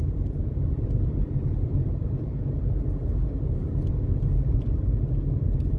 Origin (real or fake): real